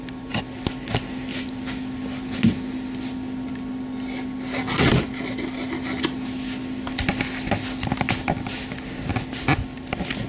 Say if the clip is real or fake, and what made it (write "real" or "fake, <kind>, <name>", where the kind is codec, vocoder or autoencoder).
real